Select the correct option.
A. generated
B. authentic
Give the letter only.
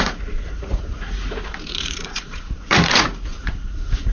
A